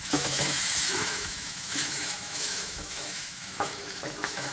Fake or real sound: fake